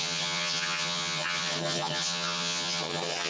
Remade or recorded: remade